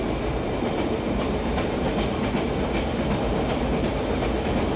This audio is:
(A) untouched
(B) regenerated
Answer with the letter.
A